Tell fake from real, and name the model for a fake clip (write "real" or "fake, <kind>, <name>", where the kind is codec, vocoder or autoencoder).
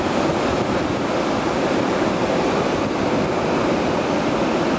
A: real